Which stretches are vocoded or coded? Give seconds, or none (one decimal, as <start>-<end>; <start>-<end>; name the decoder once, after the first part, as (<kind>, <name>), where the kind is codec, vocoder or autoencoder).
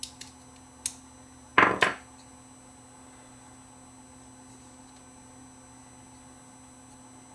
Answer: none